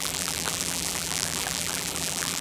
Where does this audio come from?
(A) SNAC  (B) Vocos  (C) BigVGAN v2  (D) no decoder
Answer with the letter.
C